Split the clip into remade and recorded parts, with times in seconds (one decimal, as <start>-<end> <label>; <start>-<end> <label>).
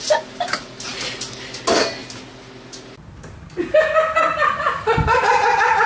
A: 0.0-5.9 recorded